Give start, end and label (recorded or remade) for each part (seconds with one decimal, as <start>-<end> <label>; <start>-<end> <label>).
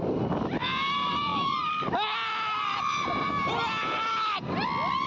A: 0.0-5.1 recorded